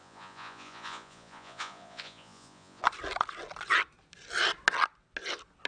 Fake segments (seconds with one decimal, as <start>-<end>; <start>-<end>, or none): 0.0-2.8